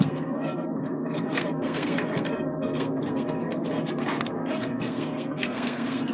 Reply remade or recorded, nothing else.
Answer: remade